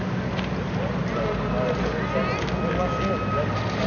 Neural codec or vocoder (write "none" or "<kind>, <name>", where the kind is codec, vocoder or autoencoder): none